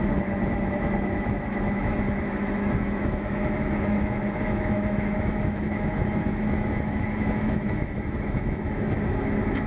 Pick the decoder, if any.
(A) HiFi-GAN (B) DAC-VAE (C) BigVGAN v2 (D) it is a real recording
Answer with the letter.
B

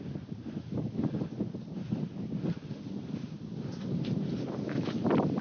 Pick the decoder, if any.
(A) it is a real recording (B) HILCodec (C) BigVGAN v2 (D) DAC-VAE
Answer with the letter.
A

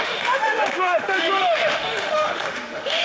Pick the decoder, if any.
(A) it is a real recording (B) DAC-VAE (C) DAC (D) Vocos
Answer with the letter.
B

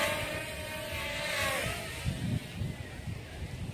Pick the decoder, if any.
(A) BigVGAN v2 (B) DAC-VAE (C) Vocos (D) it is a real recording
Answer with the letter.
D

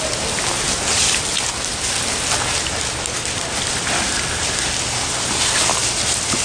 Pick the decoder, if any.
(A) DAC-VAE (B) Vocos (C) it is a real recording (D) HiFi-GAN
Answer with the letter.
C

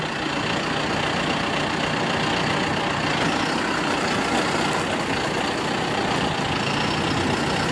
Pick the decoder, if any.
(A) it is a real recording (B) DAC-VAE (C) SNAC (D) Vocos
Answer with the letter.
A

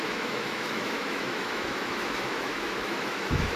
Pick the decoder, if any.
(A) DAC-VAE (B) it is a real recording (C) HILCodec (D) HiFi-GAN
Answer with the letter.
A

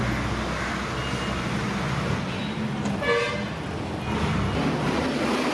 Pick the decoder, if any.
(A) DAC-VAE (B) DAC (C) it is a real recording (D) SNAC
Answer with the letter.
C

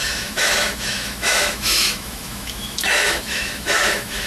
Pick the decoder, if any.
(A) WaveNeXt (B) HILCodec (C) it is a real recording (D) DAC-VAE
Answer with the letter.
D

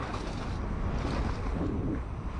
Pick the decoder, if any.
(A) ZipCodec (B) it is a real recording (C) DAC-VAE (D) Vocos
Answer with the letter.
B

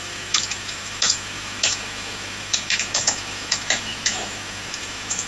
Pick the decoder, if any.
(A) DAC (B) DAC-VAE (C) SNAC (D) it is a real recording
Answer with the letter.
B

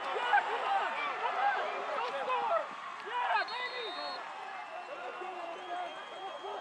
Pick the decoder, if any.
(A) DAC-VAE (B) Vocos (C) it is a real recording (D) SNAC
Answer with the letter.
C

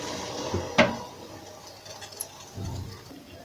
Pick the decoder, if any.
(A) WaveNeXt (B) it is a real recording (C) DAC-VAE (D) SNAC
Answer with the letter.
B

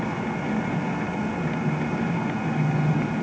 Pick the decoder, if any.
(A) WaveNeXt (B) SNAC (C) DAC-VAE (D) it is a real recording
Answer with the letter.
D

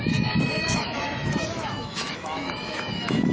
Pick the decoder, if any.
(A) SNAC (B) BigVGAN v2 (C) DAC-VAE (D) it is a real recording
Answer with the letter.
C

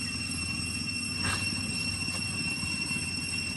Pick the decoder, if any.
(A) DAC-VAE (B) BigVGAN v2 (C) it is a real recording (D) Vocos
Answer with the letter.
C